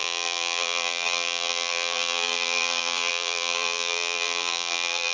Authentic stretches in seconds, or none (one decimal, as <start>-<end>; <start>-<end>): none